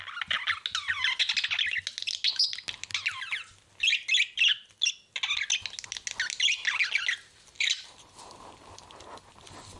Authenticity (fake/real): real